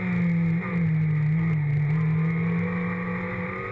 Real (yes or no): yes